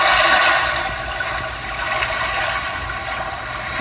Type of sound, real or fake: real